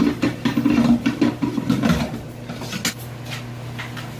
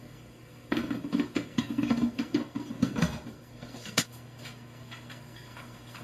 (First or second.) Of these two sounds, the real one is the first